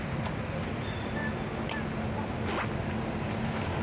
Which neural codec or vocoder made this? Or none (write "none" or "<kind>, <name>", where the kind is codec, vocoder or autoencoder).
none